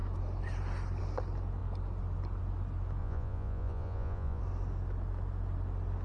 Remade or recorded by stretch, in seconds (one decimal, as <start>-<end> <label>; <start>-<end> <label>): 0.0-3.0 recorded; 3.0-4.4 remade; 4.4-6.0 recorded